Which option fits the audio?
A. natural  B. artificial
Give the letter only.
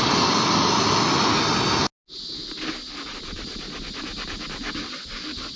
A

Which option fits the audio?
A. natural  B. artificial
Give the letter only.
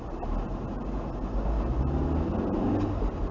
A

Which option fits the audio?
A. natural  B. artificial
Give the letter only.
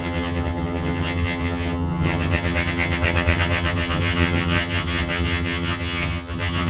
B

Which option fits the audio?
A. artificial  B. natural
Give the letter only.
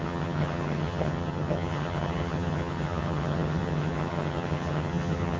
A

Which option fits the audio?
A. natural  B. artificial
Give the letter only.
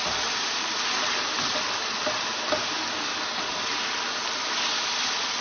A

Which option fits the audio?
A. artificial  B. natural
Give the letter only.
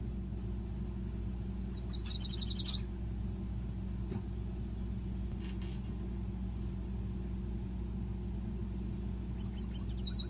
B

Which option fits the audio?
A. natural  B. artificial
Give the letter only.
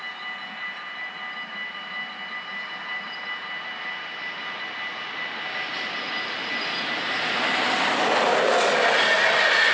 A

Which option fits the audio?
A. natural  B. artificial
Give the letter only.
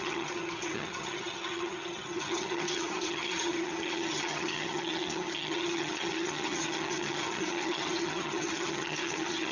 B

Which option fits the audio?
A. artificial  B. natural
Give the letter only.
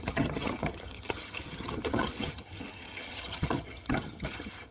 A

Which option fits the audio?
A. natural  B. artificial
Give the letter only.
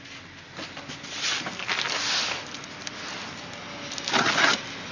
A